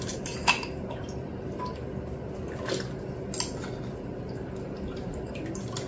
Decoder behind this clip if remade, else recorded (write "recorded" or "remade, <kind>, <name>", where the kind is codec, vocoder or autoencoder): recorded